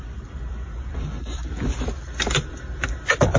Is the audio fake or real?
fake